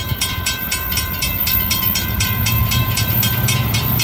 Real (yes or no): no